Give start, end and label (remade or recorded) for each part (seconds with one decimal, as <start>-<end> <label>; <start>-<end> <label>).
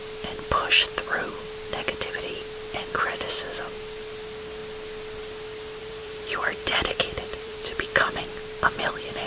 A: 0.0-5.8 recorded; 5.8-8.2 remade; 8.2-9.3 recorded